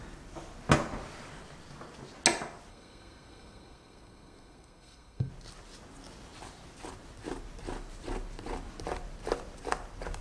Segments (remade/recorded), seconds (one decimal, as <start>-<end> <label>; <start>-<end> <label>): 0.0-2.7 recorded; 2.7-5.3 remade; 5.3-10.2 recorded